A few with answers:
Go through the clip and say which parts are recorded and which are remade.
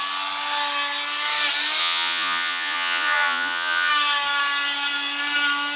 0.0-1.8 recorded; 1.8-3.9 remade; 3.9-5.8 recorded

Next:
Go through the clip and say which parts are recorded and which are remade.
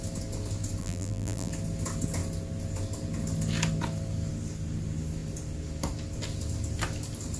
0.0-0.8 recorded; 0.8-1.5 remade; 1.5-7.4 recorded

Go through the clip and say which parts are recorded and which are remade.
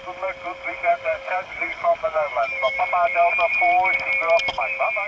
0.0-0.9 recorded; 0.9-2.8 remade; 2.8-5.1 recorded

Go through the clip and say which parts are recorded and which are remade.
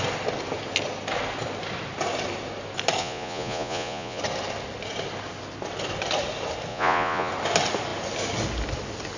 0.0-3.0 recorded; 3.0-4.2 remade; 4.2-6.7 recorded; 6.7-7.3 remade; 7.3-9.2 recorded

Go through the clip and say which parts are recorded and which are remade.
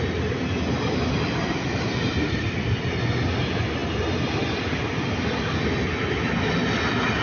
0.0-7.2 recorded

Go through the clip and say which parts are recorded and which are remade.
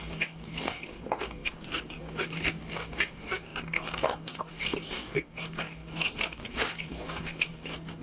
0.0-8.0 remade